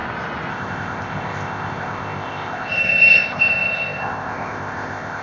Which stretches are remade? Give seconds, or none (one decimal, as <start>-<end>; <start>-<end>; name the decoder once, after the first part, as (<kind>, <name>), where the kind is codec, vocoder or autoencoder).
0.5-5.2 (codec, ZipCodec)